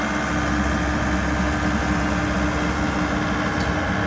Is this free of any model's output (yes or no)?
yes